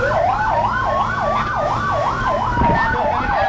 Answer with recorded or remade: recorded